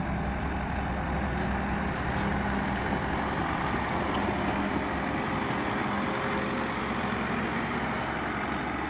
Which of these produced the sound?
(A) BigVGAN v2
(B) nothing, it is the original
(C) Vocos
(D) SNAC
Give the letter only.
B